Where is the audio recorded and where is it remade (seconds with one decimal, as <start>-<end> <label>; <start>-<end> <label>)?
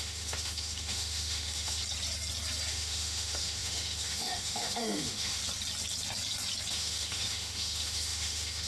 0.0-1.8 remade; 1.8-2.7 recorded; 2.7-5.4 remade; 5.4-6.7 recorded; 6.7-8.7 remade